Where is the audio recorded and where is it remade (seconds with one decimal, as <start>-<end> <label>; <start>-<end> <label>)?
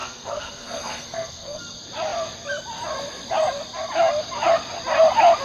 0.0-1.6 remade; 1.6-5.4 recorded